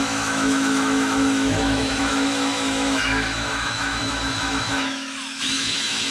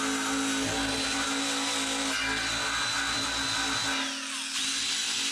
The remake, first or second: first